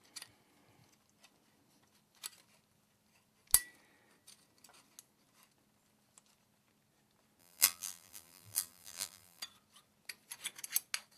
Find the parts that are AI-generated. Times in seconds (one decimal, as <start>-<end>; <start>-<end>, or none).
7.4-9.4